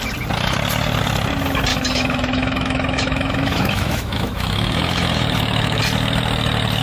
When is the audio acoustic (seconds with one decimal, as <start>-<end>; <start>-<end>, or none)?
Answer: 0.0-1.7; 5.8-6.8